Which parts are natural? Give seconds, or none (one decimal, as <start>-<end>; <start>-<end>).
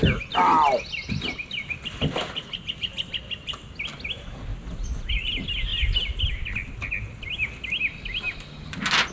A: 0.0-9.1